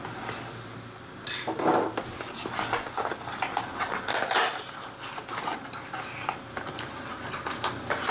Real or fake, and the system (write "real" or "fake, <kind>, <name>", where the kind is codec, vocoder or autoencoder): real